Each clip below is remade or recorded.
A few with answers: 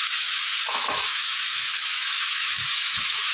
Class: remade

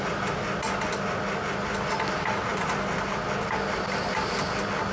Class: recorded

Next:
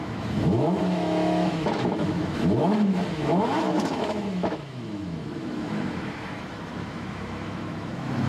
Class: remade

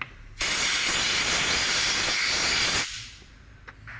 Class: recorded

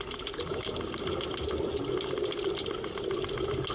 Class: recorded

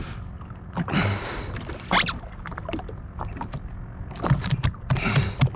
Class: remade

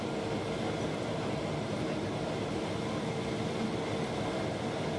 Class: recorded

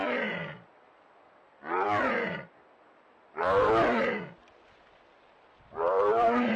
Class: recorded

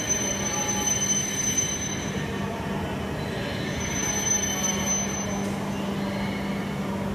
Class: recorded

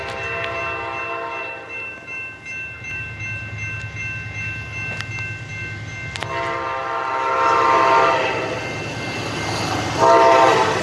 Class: recorded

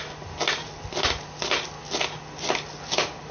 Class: recorded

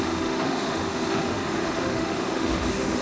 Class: remade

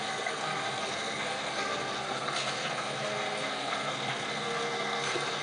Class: remade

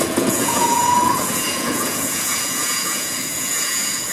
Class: remade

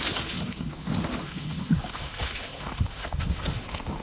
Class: remade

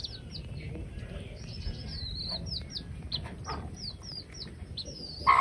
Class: recorded